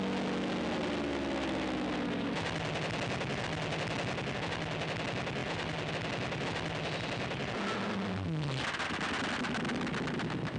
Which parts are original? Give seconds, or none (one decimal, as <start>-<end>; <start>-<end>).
0.0-10.6